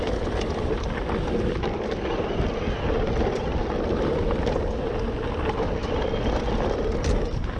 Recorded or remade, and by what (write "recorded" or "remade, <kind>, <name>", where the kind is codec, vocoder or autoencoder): recorded